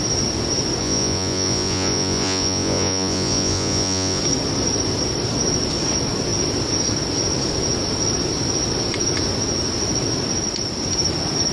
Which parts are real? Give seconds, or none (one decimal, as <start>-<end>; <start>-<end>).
0.0-0.8; 4.2-11.5